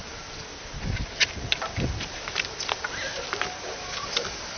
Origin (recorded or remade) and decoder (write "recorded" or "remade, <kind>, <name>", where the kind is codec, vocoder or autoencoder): recorded